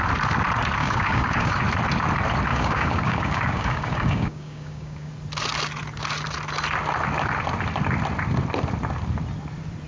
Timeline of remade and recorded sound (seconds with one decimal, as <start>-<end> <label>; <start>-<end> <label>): 0.0-0.8 recorded; 0.8-1.6 remade; 1.6-2.5 recorded; 2.5-5.1 remade; 5.1-9.9 recorded